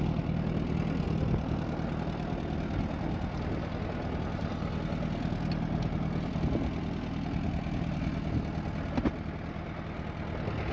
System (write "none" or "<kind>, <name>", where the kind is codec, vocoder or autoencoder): none